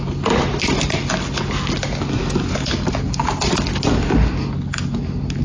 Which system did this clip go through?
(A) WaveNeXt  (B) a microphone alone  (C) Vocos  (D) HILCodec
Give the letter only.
B